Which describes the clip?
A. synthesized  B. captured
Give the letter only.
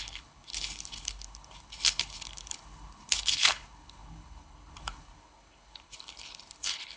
A